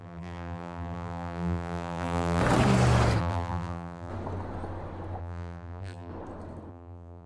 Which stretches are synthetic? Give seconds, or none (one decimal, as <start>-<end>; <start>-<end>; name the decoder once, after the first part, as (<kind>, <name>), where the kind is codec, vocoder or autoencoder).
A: 0.0-2.4 (vocoder, BigVGAN v2); 3.2-4.1; 5.2-6.1; 6.7-7.3